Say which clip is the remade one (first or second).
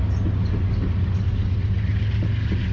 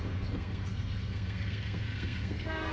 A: second